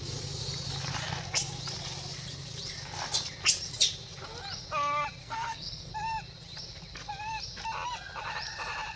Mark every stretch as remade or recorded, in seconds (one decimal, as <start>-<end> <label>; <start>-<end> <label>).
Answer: 0.0-5.2 recorded; 5.2-5.9 remade; 5.9-9.0 recorded